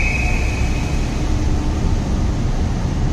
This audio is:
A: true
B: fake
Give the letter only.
A